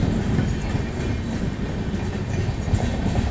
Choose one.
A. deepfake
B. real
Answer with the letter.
B